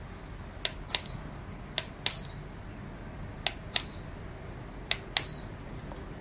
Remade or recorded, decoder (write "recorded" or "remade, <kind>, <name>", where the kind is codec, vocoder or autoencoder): recorded